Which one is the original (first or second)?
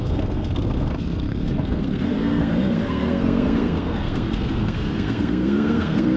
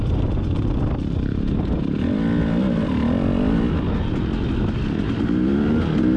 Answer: second